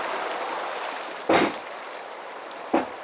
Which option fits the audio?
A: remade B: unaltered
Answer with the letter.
B